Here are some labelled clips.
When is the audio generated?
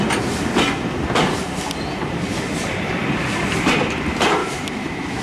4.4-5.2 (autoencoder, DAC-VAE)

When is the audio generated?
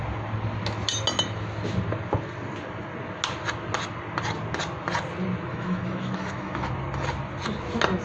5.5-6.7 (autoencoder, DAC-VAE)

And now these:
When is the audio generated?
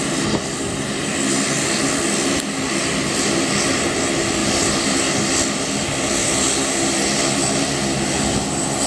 none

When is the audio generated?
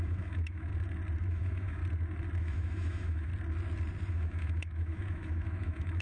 0.0-0.7 (autoencoder, DAC-VAE); 1.3-1.8; 2.4-3.3; 4.1-6.0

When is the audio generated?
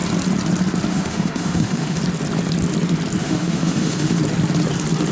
0.9-2.0 (autoencoder, DAC-VAE); 3.2-4.2